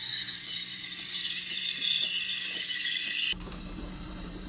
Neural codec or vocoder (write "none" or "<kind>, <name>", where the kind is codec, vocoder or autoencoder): vocoder, BigVGAN v2